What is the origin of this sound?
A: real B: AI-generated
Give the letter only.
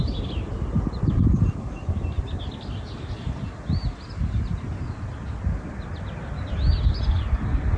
A